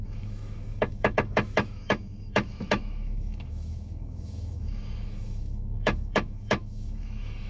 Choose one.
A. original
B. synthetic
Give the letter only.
B